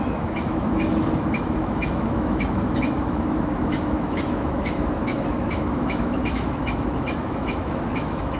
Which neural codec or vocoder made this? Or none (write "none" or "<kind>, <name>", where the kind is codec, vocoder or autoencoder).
autoencoder, DAC-VAE